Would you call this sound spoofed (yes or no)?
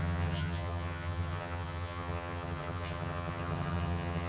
yes